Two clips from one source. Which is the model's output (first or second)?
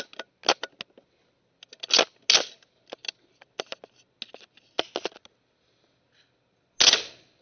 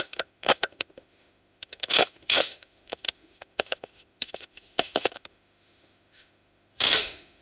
second